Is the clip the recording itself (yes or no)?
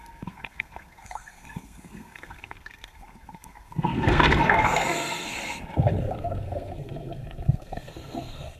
no